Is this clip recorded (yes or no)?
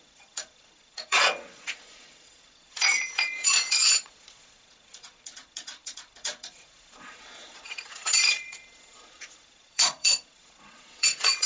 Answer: no